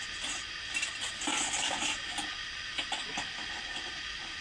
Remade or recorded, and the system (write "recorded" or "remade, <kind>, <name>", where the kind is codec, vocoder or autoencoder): recorded